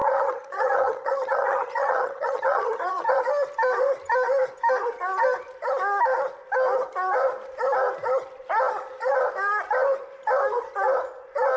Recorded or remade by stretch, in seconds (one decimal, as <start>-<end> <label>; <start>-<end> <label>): 0.0-3.2 remade; 3.2-11.6 recorded